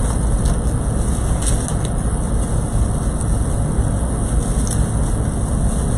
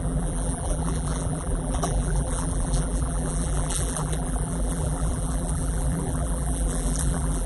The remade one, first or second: second